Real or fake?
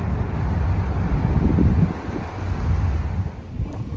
real